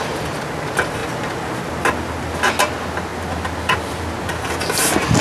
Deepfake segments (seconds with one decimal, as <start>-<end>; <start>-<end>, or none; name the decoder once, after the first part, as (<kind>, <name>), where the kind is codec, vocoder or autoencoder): none